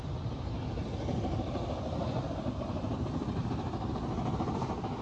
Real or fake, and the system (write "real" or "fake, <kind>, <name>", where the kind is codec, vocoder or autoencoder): real